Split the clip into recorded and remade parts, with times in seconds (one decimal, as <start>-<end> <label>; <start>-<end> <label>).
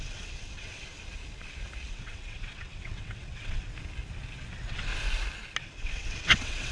0.0-0.8 remade; 0.8-1.9 recorded; 1.9-3.7 remade; 3.7-4.5 recorded; 4.5-4.9 remade; 4.9-5.6 recorded; 5.6-6.7 remade